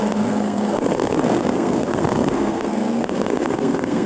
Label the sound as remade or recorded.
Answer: remade